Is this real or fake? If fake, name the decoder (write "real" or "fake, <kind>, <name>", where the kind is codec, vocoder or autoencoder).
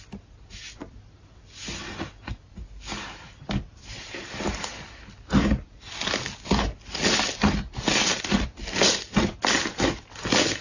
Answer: real